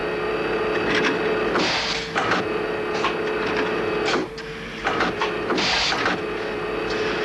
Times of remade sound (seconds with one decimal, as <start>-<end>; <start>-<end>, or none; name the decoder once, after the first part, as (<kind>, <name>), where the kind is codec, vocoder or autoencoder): none